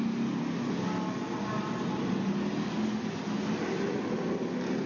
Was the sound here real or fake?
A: real